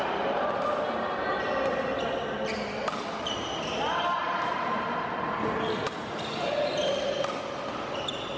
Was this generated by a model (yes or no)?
no